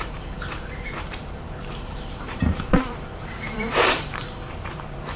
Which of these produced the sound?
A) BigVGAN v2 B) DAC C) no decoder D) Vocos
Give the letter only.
A